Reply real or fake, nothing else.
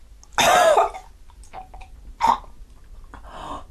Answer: real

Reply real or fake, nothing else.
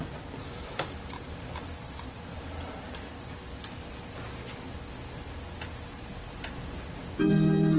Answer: real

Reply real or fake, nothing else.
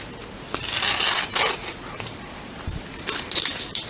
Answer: real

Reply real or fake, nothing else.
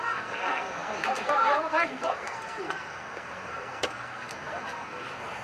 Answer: fake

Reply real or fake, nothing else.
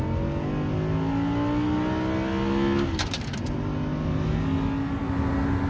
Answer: real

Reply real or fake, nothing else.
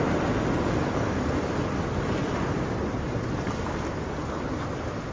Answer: real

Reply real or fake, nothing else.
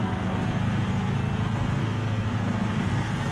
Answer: fake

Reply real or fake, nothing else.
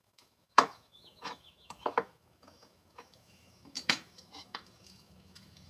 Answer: fake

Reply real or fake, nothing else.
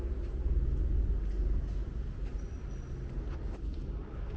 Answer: real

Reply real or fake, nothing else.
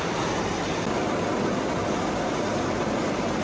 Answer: real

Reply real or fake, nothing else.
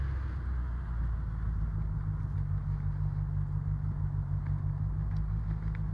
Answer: real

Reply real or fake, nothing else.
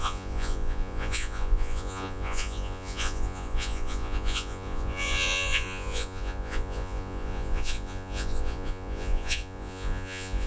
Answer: fake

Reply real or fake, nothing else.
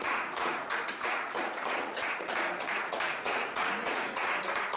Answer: fake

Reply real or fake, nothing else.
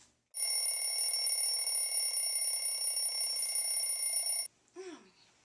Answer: real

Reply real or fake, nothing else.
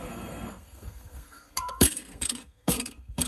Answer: fake